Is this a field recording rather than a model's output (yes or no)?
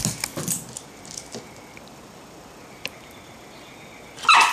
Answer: yes